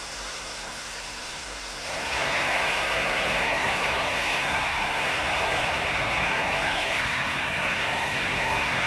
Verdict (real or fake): fake